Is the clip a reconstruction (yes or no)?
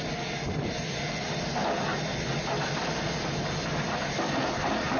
no